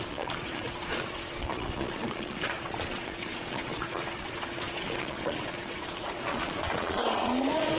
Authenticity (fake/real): fake